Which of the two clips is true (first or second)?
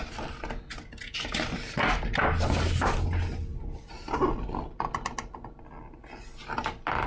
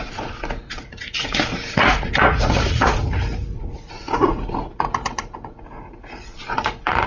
first